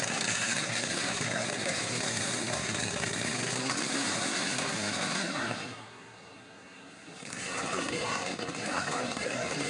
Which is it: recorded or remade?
remade